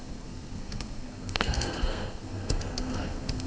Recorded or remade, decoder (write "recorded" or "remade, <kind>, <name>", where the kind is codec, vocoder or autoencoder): remade, codec, SNAC